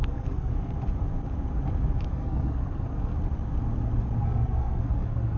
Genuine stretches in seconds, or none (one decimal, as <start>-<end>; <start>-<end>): 0.5-2.1; 3.1-4.2